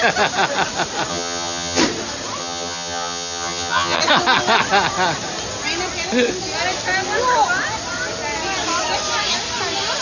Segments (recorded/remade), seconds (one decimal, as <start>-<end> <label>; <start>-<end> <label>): 0.0-1.1 recorded; 1.1-1.8 remade; 1.8-2.4 recorded; 2.4-4.0 remade; 4.0-10.0 recorded